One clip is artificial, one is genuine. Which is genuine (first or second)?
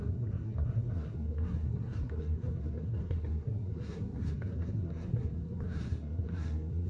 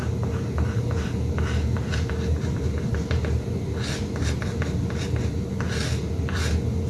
second